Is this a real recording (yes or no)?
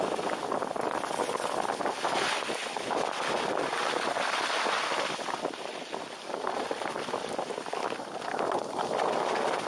yes